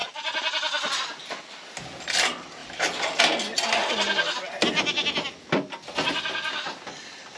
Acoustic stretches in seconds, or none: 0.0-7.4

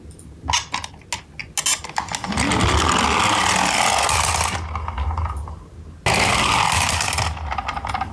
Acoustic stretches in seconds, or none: 0.0-8.1

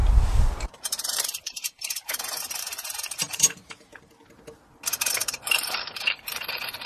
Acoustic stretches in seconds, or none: 4.1-5.2

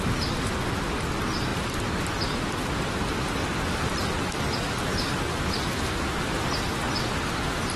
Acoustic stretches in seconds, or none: 0.0-1.5; 4.8-7.8